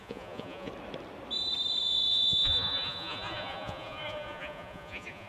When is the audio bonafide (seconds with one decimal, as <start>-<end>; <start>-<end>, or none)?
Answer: 0.7-2.1